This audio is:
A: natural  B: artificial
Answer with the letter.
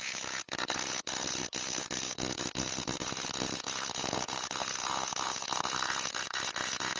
B